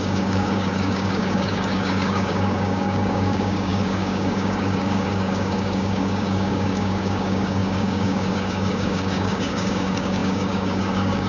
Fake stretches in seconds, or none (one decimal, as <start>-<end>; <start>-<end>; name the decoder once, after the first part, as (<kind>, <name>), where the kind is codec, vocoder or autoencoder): 0.0-11.3 (codec, DAC)